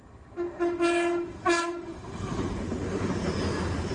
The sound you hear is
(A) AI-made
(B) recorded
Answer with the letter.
A